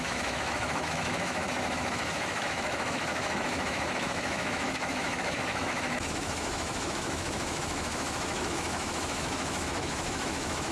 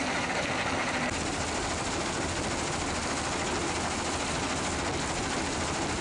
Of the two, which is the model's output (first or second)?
first